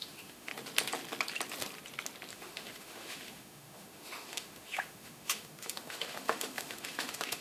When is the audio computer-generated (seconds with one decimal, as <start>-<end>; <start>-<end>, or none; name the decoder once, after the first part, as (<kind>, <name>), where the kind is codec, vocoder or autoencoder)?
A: 0.0-0.5 (autoencoder, DAC-VAE); 2.3-7.4